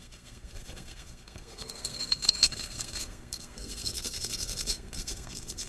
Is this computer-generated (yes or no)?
yes